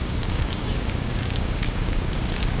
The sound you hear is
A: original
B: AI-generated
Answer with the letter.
B